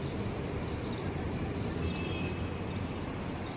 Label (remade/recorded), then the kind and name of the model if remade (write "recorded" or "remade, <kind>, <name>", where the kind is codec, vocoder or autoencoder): remade, vocoder, BigVGAN v2